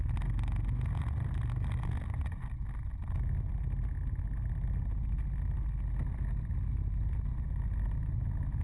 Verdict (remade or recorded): recorded